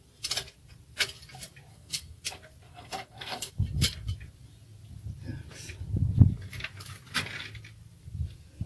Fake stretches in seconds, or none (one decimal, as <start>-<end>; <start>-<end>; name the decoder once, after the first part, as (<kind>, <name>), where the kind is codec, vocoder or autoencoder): 1.7-2.2 (codec, SNAC); 2.7-3.5